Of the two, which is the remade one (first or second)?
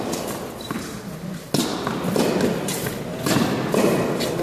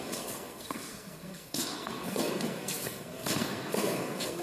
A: second